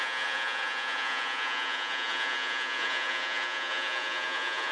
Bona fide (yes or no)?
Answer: no